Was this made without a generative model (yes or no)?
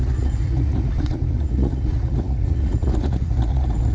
no